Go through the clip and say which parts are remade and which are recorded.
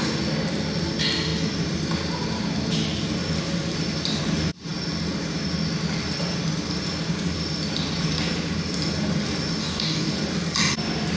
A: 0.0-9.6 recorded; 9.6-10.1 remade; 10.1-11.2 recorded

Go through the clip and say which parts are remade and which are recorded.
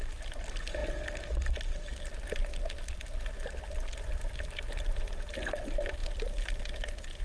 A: 0.0-7.2 recorded